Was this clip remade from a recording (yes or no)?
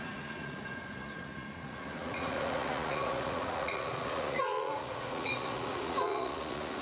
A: yes